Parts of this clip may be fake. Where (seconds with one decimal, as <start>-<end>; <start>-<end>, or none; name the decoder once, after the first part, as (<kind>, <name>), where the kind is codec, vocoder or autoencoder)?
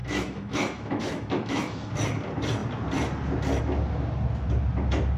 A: 0.0-1.9 (autoencoder, DAC-VAE)